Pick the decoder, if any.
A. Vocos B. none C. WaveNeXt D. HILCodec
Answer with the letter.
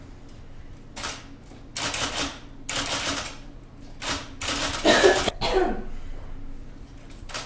B